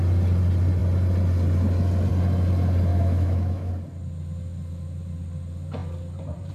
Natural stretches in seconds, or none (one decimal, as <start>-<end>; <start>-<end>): 0.0-2.9; 3.7-6.5